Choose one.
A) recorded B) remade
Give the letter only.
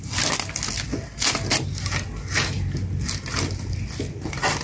A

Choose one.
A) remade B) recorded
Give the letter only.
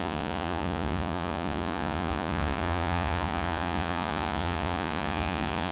A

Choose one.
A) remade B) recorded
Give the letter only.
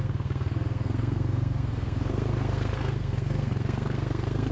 A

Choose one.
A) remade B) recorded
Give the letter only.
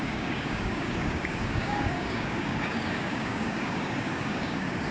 A